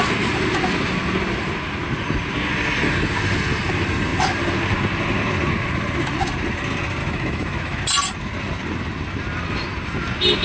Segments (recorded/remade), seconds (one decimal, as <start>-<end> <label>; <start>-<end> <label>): 0.0-7.0 recorded; 7.0-7.8 remade; 7.8-10.4 recorded